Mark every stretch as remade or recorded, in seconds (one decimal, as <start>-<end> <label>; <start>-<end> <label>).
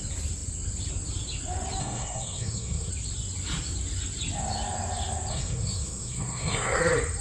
0.0-1.8 recorded; 1.8-2.9 remade; 2.9-5.3 recorded; 5.3-6.8 remade; 6.8-7.2 recorded